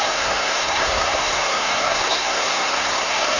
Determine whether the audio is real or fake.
fake